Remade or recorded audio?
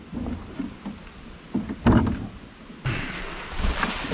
recorded